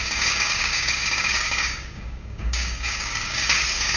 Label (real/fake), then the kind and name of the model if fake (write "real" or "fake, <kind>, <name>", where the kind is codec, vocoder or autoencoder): fake, codec, DAC